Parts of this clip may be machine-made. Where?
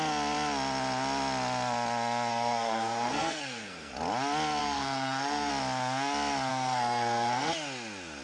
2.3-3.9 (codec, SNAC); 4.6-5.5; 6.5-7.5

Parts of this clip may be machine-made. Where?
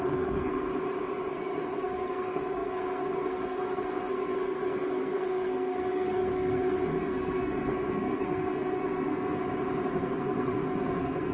0.0-0.7 (codec, SNAC); 1.3-9.4; 9.9-11.3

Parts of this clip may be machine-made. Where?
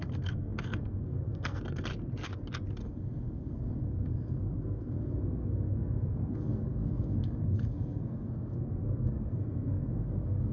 0.0-1.9 (codec, SNAC); 2.8-10.5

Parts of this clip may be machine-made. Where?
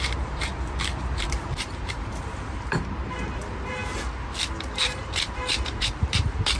0.0-0.5 (vocoder, BigVGAN v2); 1.2-3.8; 4.5-6.6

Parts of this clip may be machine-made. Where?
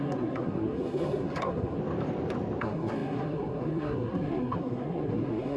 0.0-1.8 (codec, SNAC); 2.6-5.6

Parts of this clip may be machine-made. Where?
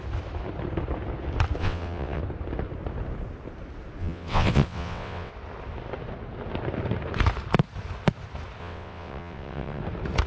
1.6-2.2 (vocoder, WaveNeXt); 4.0-5.3; 8.6-9.8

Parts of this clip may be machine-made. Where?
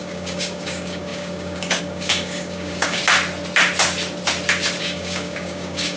0.0-3.0 (codec, DAC); 4.8-6.0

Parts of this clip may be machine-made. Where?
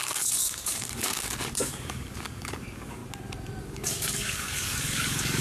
0.0-3.0 (codec, DAC); 3.6-5.4